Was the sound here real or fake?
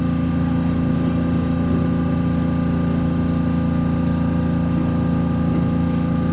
real